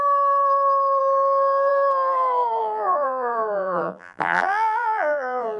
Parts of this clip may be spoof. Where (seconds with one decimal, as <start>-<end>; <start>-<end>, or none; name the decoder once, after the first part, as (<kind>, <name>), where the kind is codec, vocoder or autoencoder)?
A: 2.6-5.6 (vocoder, BigVGAN v2)